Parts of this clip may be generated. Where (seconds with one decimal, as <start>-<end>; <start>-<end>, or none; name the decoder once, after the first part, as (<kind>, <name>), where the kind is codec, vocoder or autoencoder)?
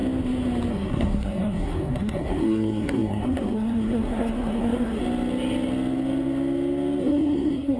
0.7-5.0 (codec, SNAC); 7.0-7.8